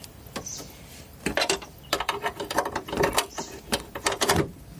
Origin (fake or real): fake